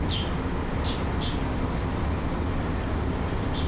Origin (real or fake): real